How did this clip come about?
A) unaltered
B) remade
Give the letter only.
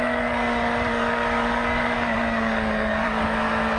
B